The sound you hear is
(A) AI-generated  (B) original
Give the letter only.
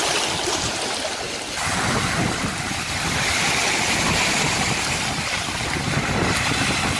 B